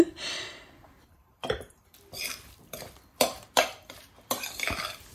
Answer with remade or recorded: remade